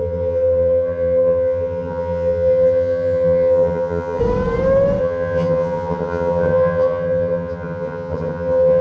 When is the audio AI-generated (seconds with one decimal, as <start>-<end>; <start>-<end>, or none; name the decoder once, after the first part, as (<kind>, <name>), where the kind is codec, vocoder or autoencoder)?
0.0-4.2 (vocoder, HiFi-GAN); 5.0-8.8